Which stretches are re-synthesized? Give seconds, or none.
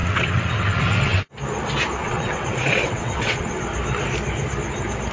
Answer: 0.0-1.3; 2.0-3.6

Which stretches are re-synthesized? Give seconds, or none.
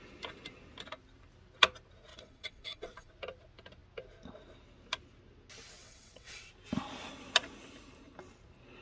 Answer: 2.1-3.1; 5.8-6.5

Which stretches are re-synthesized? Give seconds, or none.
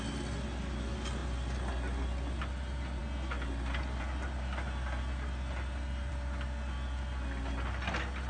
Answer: none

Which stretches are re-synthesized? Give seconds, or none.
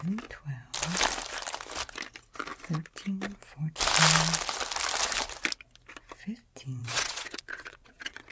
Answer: 6.8-8.3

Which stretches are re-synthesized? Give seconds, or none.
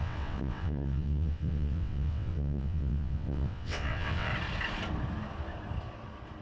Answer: 0.0-4.3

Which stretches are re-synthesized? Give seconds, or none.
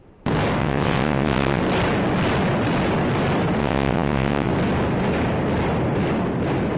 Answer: 0.6-1.6; 3.6-4.5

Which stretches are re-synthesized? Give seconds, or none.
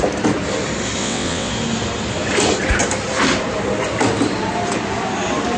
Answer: 1.0-1.5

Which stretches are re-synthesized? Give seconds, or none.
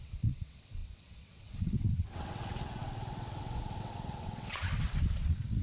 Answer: 0.0-5.6